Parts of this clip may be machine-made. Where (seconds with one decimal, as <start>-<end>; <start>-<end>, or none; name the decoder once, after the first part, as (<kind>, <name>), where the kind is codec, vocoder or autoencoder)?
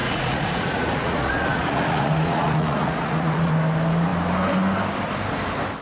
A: 0.0-3.5 (vocoder, Vocos)